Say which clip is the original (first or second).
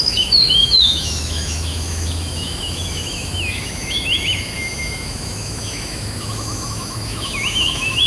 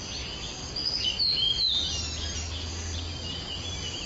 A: second